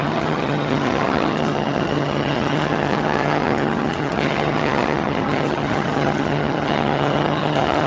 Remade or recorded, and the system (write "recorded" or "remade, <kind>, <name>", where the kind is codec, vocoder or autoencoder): remade, vocoder, HiFi-GAN